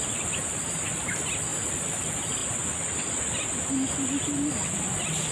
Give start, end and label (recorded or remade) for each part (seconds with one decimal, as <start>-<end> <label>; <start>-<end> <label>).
0.0-5.3 recorded